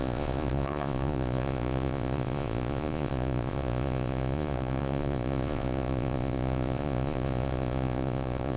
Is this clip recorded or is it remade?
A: remade